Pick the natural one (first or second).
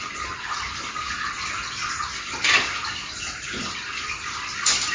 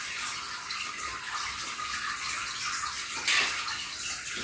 second